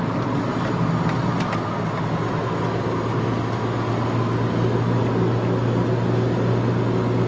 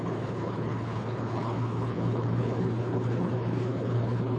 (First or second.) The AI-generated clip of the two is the second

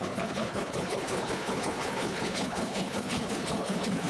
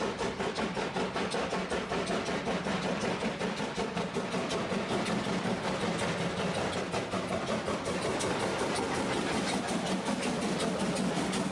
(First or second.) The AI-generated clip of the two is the first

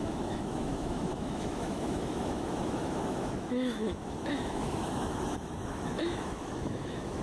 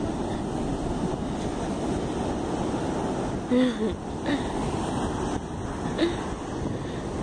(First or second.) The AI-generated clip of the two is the first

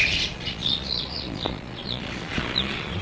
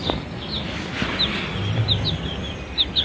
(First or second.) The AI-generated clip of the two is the first